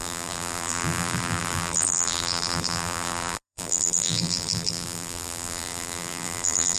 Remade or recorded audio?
remade